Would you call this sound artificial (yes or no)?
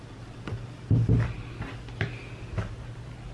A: no